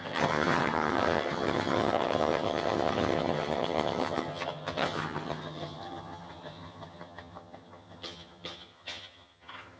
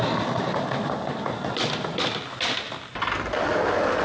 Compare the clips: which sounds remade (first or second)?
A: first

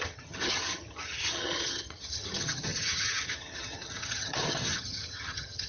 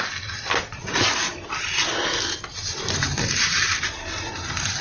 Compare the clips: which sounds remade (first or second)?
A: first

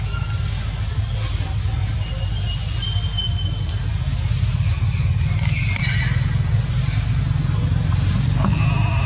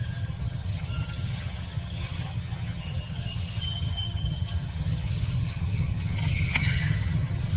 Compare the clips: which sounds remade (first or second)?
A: second